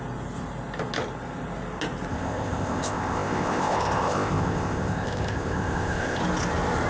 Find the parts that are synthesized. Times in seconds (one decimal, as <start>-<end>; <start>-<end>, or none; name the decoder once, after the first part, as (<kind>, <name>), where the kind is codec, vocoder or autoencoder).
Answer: 2.1-6.2 (codec, ZipCodec)